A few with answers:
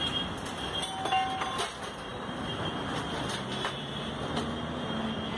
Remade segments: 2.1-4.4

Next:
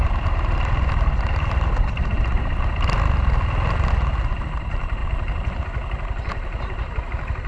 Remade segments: none

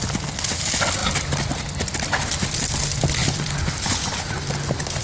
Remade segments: 3.2-4.1

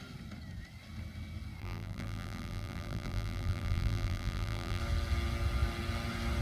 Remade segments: 1.6-4.8